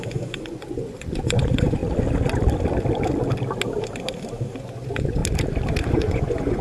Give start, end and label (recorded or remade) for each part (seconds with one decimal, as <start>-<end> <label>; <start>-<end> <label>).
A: 0.0-1.8 remade; 1.8-4.6 recorded; 4.6-5.2 remade; 5.2-5.8 recorded; 5.8-6.6 remade